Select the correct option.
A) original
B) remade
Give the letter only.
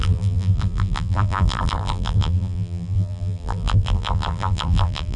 B